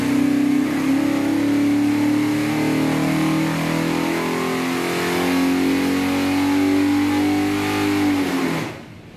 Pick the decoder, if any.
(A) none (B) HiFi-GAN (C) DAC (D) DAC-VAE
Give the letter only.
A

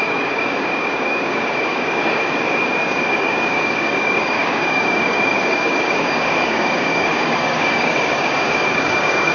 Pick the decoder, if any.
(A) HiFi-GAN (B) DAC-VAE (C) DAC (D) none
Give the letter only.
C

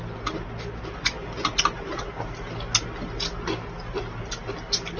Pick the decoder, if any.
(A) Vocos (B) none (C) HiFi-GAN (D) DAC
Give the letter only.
B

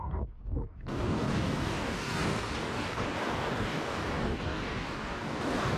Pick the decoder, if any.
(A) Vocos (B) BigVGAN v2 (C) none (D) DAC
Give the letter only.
D